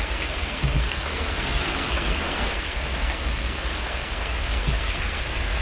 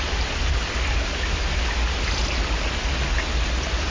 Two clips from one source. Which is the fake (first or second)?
first